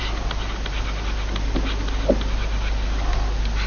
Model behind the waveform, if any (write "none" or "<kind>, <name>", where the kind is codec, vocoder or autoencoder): none